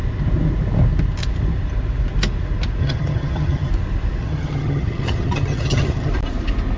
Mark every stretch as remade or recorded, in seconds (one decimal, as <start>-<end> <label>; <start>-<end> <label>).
0.0-2.8 recorded; 2.8-3.7 remade; 3.7-4.2 recorded; 4.2-6.1 remade; 6.1-6.8 recorded